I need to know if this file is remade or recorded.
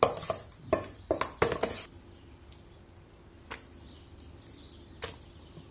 recorded